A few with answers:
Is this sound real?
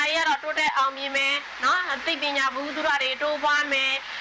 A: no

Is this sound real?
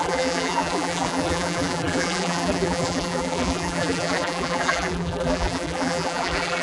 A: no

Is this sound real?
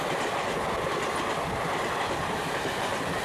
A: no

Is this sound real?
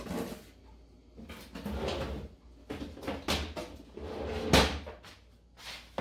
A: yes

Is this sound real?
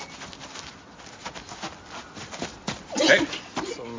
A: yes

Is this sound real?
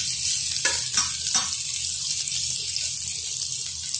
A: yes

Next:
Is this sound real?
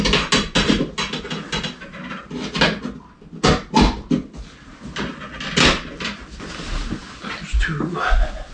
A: yes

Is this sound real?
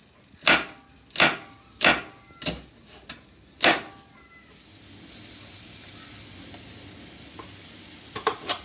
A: yes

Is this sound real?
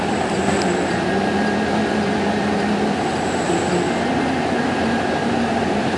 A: yes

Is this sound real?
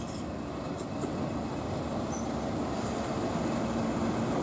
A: yes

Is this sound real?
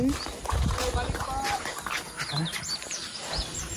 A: yes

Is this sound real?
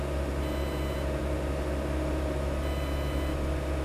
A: yes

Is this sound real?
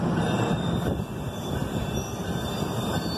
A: yes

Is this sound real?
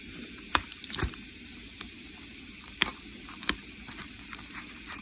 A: no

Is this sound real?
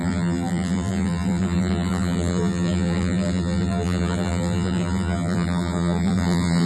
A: no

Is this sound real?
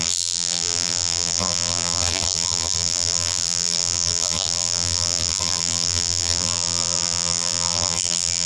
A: no